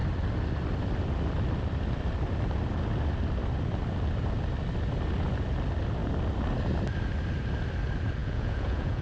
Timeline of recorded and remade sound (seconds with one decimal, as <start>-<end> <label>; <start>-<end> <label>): 0.0-8.2 recorded; 8.2-9.0 remade